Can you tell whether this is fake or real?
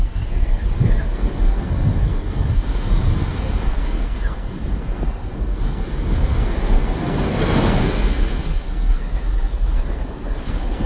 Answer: fake